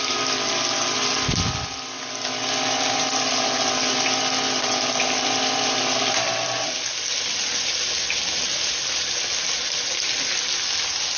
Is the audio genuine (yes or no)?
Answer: yes